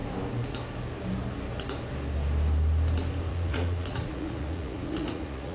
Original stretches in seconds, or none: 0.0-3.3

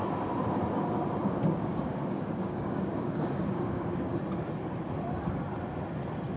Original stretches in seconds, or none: 0.0-1.2; 4.2-6.4

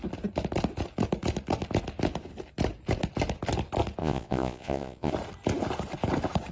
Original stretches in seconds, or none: 0.0-4.0; 5.1-6.5

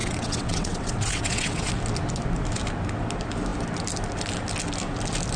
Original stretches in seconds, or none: 1.7-5.4